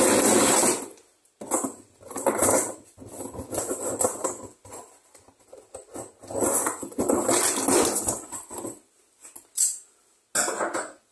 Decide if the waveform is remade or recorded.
recorded